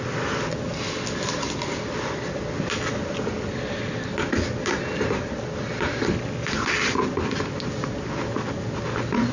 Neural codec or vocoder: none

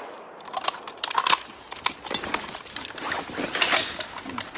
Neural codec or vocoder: none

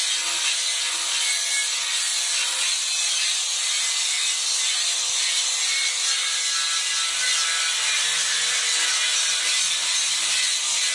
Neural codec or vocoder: none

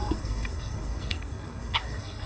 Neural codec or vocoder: codec, SNAC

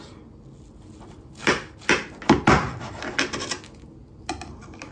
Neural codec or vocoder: none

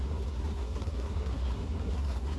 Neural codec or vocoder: codec, SNAC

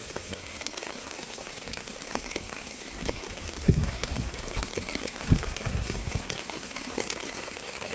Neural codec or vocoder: codec, SNAC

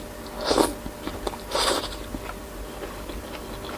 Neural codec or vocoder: none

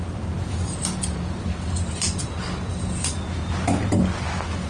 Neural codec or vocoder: none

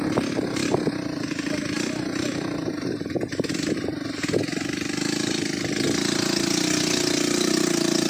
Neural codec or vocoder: none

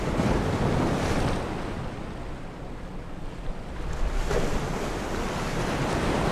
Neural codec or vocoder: none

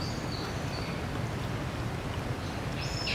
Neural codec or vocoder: none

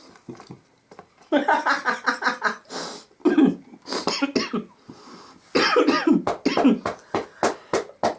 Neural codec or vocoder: none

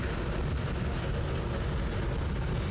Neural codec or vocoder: none